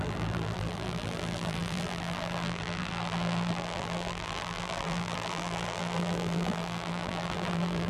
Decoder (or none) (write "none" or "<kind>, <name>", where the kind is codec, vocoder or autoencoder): vocoder, BigVGAN v2